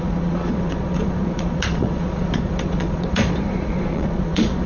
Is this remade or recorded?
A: remade